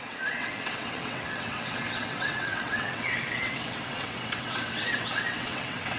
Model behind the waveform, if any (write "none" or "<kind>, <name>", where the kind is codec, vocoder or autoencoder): vocoder, WaveNeXt